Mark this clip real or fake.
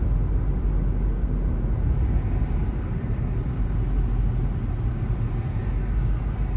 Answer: real